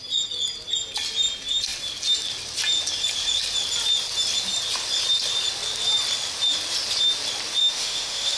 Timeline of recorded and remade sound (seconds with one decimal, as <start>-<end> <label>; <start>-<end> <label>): 0.0-7.6 recorded; 7.6-8.4 remade